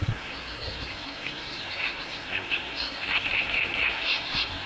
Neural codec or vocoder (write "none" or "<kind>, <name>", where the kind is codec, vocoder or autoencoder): codec, SNAC